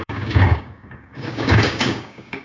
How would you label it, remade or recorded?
remade